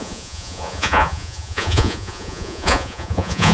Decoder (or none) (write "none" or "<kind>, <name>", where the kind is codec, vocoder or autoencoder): vocoder, Vocos